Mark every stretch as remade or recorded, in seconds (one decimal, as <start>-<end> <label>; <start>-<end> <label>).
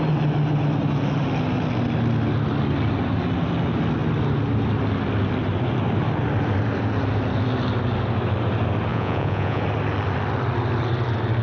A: 0.0-8.9 recorded; 8.9-9.6 remade; 9.6-11.4 recorded